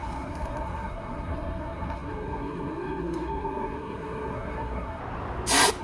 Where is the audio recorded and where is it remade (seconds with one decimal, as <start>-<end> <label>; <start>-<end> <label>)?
0.0-5.0 remade; 5.0-5.8 recorded